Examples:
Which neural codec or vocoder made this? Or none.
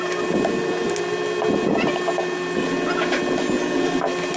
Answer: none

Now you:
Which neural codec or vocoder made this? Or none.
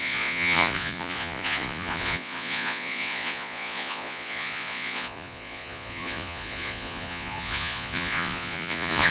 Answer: vocoder, Vocos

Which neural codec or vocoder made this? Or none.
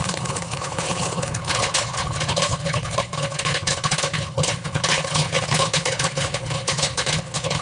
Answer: codec, HILCodec